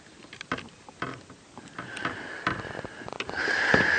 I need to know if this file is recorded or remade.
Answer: recorded